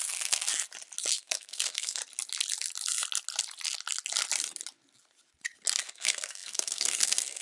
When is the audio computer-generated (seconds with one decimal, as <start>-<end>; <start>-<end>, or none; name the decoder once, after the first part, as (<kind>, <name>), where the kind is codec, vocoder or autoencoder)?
0.0-0.5 (codec, SNAC); 1.1-2.0; 5.8-7.4